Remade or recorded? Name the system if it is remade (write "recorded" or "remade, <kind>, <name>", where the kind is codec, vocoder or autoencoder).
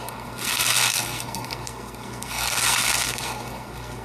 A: remade, codec, SNAC